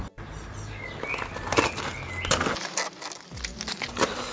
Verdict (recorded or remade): recorded